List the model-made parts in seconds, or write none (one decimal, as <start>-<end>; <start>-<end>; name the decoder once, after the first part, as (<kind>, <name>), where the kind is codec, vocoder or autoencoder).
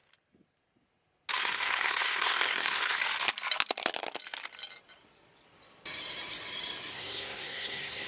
1.4-3.0 (codec, SNAC); 6.9-8.1